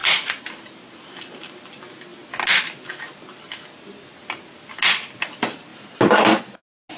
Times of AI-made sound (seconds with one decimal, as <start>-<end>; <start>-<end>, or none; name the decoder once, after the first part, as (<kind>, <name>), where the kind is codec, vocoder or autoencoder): 0.0-1.0 (vocoder, BigVGAN v2)